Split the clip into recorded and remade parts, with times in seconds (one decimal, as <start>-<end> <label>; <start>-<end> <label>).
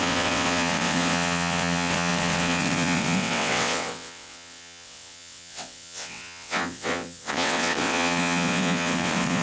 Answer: 0.0-9.4 remade